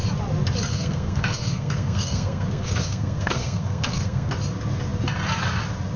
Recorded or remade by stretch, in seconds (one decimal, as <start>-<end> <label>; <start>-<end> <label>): 0.0-0.7 recorded; 0.7-4.3 remade; 4.3-6.0 recorded